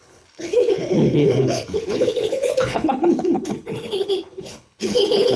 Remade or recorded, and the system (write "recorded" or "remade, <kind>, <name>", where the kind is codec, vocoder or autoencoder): remade, codec, HILCodec